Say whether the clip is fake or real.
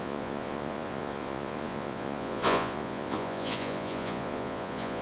fake